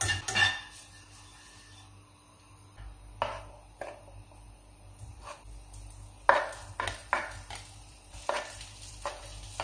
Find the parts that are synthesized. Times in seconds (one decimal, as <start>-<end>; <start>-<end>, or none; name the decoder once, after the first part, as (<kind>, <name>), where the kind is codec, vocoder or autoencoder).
7.0-9.2 (vocoder, BigVGAN v2)